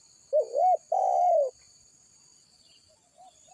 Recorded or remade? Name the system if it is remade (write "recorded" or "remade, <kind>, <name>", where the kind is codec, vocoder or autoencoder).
recorded